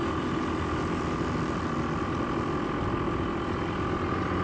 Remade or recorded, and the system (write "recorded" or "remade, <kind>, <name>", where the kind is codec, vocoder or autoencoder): recorded